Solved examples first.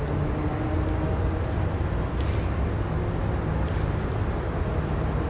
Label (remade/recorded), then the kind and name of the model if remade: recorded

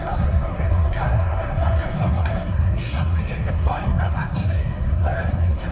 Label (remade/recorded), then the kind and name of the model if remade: remade, codec, SNAC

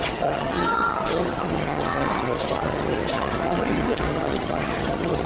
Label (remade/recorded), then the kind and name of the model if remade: remade, vocoder, HiFi-GAN